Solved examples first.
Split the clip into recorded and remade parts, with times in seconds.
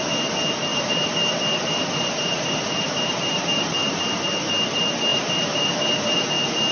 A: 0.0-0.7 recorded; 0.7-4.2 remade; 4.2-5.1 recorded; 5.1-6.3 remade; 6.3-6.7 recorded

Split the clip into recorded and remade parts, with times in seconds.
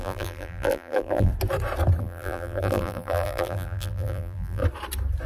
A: 0.0-1.3 remade; 1.3-2.0 recorded; 2.0-4.6 remade; 4.6-5.3 recorded